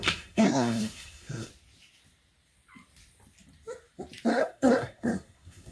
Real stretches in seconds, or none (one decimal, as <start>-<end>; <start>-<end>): 1.5-4.3